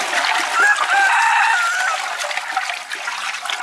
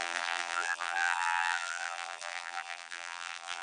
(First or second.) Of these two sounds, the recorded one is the first